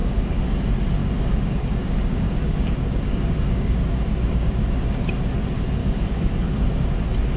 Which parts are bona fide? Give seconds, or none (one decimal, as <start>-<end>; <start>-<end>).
0.5-1.0; 5.1-5.8; 6.9-7.4